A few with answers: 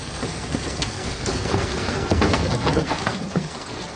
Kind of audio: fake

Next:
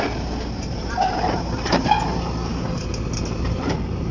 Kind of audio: fake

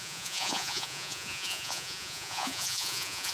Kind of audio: fake